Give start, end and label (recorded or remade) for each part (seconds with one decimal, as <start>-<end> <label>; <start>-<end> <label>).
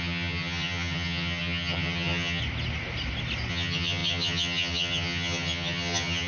0.0-2.4 remade; 2.4-3.5 recorded; 3.5-6.3 remade